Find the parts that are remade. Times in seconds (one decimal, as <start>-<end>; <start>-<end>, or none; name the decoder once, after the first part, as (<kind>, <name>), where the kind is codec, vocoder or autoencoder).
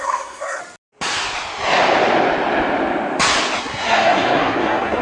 0.0-0.6 (codec, SNAC); 3.6-5.0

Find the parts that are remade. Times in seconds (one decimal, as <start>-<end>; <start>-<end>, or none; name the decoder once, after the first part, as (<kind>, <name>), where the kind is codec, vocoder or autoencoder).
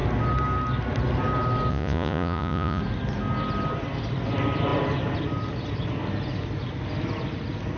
1.7-2.8 (vocoder, Vocos)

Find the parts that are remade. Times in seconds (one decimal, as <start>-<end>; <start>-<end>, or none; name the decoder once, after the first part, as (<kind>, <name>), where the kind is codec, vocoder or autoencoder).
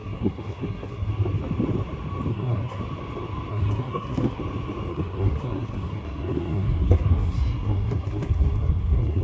0.0-1.1 (codec, SNAC); 2.3-2.8; 3.5-4.4; 4.9-9.2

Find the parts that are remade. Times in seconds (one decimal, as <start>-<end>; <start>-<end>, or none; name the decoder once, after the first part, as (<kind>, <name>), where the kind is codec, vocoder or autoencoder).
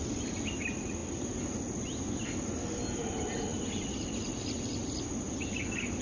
none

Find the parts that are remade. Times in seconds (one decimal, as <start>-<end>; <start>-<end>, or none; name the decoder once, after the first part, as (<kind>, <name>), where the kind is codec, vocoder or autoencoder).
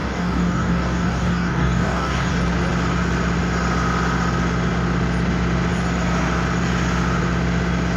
0.0-2.3 (codec, DAC)